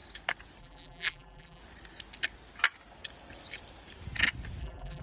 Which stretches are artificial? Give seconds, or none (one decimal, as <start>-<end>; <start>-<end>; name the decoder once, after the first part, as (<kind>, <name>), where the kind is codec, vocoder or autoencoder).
0.6-1.6 (vocoder, BigVGAN v2); 4.6-5.0